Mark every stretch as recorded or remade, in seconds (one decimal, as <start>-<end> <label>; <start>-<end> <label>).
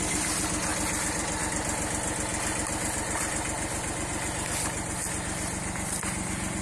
0.0-0.7 recorded; 0.7-1.4 remade; 1.4-6.6 recorded